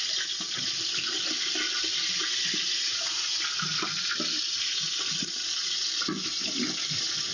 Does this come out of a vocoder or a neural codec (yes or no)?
no